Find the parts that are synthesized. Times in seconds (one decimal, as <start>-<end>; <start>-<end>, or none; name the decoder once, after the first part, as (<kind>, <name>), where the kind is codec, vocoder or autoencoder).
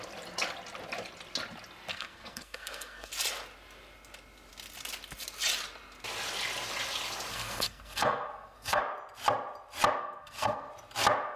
1.9-3.1 (codec, SNAC); 7.3-8.8; 10.0-10.7